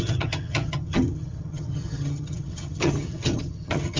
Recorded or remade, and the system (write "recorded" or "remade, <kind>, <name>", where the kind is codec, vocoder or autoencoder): remade, vocoder, HiFi-GAN